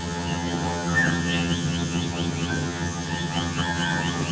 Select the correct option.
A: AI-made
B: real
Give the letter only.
A